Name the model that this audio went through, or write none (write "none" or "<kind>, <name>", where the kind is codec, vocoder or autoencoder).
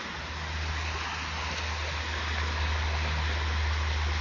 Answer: none